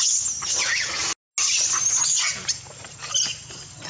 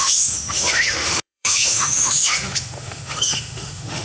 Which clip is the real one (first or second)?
first